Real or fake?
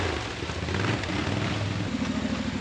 real